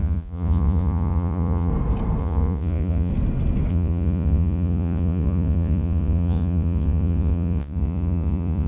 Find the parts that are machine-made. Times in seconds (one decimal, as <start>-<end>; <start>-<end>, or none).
0.0-1.7; 2.2-3.1; 3.7-8.7